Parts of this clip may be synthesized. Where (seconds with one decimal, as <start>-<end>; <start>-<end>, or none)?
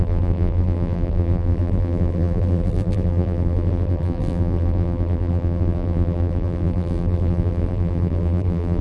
0.0-8.8